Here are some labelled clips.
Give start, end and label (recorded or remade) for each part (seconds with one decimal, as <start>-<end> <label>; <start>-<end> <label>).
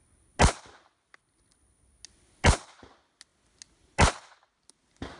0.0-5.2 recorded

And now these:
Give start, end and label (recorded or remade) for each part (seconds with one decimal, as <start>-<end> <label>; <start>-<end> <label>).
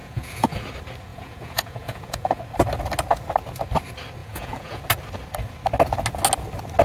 0.0-0.7 remade; 0.7-1.1 recorded; 1.1-2.4 remade; 2.4-4.2 recorded; 4.2-4.8 remade; 4.8-6.8 recorded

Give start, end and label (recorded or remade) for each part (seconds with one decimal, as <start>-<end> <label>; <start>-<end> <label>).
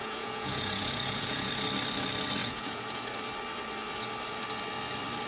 0.0-1.5 remade; 1.5-2.4 recorded; 2.4-3.1 remade; 3.1-5.3 recorded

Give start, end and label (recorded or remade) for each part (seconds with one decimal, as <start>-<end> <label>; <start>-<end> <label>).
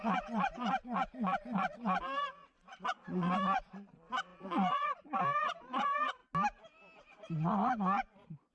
0.0-6.2 remade; 6.2-7.0 recorded; 7.0-8.5 remade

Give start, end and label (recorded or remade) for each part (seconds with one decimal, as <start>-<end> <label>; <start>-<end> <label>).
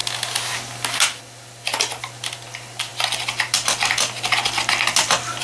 0.0-5.4 recorded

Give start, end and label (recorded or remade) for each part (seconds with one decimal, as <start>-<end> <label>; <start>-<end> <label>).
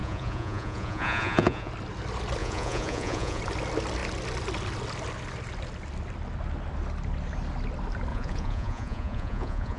0.0-1.7 remade; 1.7-2.4 recorded; 2.4-3.4 remade; 3.4-8.1 recorded; 8.1-9.8 remade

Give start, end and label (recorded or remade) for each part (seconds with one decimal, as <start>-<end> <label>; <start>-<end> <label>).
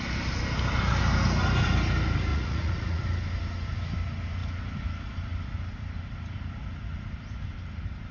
0.0-2.3 recorded; 2.3-3.0 remade; 3.0-8.1 recorded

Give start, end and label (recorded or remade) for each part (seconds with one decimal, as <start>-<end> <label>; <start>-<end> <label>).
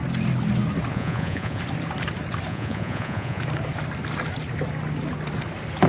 0.0-0.9 recorded; 0.9-1.6 remade; 1.6-2.5 recorded; 2.5-3.4 remade; 3.4-5.9 recorded